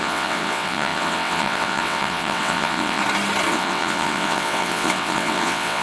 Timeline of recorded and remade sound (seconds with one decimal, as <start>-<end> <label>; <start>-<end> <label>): 0.0-3.0 remade; 3.0-3.5 recorded; 3.5-5.8 remade